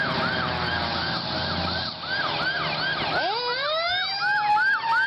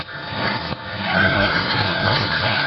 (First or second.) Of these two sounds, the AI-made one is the second